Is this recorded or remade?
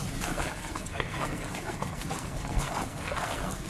remade